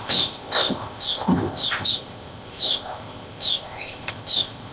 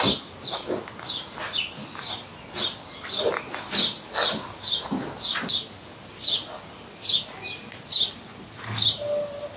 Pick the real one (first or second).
second